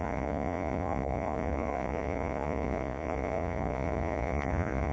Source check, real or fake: fake